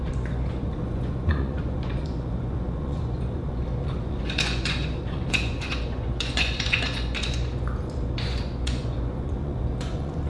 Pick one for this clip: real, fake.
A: fake